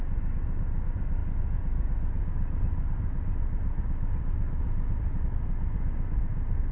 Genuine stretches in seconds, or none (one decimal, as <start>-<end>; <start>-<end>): 0.0-6.7